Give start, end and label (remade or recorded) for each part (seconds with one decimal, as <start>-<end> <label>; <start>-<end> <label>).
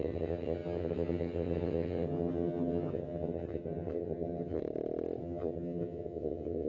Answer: 0.0-4.6 remade; 4.6-5.2 recorded; 5.2-6.7 remade